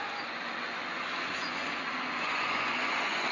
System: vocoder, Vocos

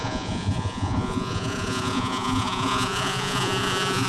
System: vocoder, Vocos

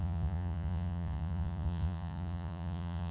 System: vocoder, Vocos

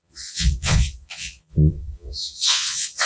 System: vocoder, Vocos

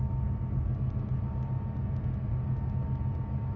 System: none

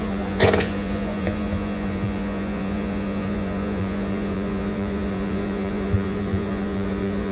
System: vocoder, Vocos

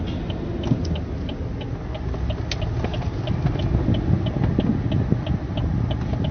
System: none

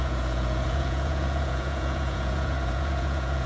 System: vocoder, Vocos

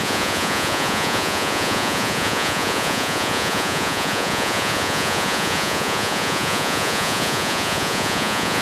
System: vocoder, Vocos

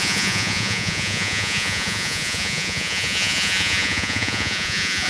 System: vocoder, Vocos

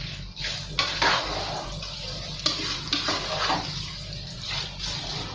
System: none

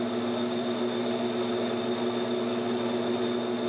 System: none